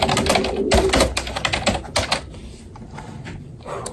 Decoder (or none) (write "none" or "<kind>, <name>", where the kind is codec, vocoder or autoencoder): none